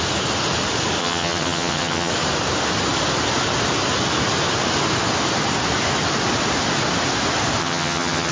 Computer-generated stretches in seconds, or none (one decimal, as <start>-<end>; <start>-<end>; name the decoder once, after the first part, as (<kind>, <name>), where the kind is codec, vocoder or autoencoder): 1.0-2.1 (vocoder, HiFi-GAN); 7.6-8.3

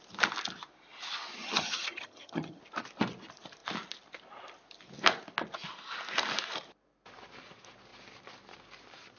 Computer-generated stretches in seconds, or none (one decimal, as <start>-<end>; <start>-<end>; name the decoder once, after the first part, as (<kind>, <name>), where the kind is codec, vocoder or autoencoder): 1.4-2.6 (vocoder, HiFi-GAN)

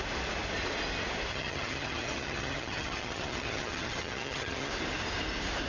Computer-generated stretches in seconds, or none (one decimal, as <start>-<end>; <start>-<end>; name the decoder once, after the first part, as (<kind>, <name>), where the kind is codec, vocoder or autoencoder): 1.3-4.7 (vocoder, HiFi-GAN)

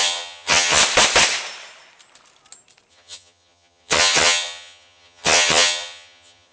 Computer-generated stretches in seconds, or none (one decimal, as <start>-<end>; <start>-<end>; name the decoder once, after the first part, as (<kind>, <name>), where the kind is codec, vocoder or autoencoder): 0.0-0.8 (vocoder, HiFi-GAN); 2.9-6.5